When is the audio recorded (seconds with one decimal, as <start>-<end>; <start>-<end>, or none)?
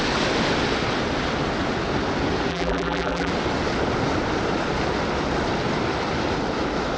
0.0-2.5; 3.3-7.0